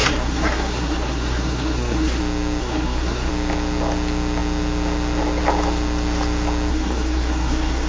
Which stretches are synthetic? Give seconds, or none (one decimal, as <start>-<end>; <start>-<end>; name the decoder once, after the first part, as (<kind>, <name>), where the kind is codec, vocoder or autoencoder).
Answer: 0.0-2.2 (codec, SNAC); 2.6-3.3; 6.7-7.9